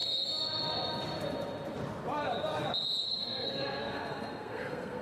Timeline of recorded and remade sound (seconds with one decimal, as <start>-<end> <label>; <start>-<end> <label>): 0.0-3.0 recorded; 3.0-5.0 remade